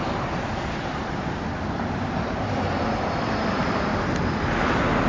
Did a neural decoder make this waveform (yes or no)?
no